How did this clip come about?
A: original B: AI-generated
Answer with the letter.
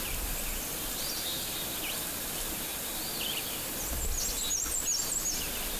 A